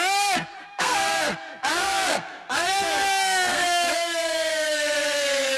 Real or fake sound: fake